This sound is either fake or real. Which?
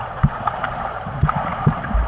fake